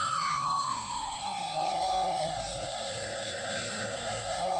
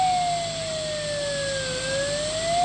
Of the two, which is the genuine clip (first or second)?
second